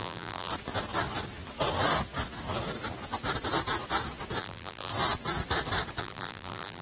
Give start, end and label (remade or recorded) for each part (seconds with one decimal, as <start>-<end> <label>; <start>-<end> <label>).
0.0-0.5 remade; 0.5-4.4 recorded; 4.4-4.9 remade; 4.9-6.0 recorded; 6.0-6.8 remade